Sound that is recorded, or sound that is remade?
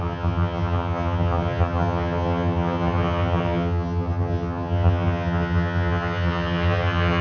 remade